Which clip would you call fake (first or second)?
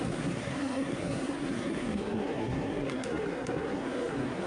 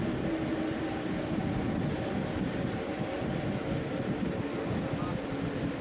first